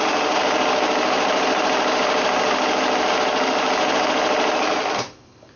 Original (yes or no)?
yes